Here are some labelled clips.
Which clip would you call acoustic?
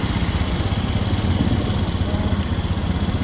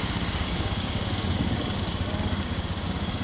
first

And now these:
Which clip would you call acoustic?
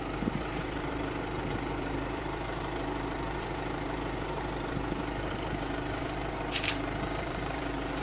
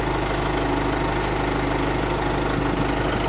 second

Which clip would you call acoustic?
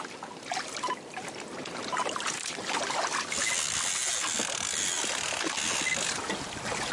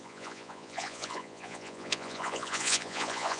first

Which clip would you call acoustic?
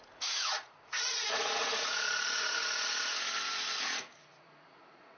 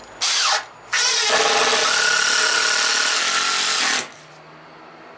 second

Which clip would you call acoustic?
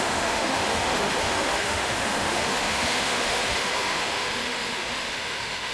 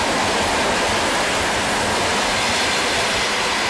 second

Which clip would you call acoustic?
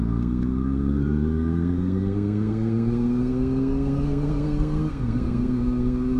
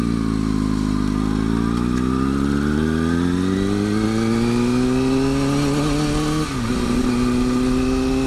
second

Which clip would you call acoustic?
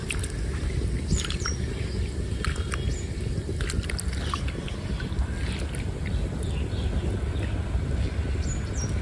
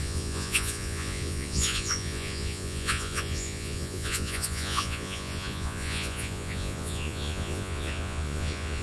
first